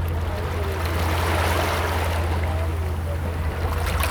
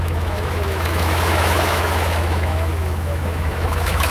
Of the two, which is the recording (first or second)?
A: first